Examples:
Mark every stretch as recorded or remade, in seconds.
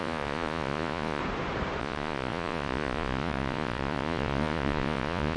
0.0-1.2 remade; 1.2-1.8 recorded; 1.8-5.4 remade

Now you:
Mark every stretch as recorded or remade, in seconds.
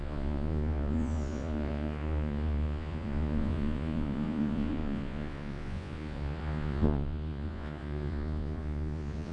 0.0-9.3 remade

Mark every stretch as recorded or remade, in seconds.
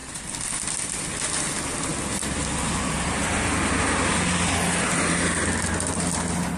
0.0-6.6 recorded